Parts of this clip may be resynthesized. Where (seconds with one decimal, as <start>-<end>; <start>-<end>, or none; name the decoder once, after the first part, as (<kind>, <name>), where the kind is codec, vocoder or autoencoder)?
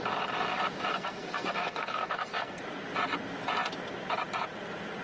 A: 0.9-2.6 (codec, SNAC)